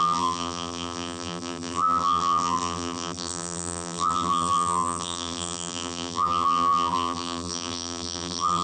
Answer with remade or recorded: remade